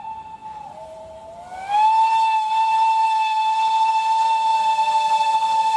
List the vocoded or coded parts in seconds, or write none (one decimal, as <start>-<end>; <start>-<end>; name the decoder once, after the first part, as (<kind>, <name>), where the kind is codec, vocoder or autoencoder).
none